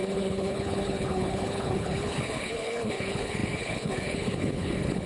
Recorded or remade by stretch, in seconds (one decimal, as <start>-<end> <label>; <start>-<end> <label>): 0.0-5.1 remade